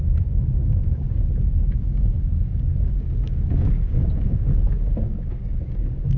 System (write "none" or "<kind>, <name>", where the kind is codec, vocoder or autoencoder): codec, DAC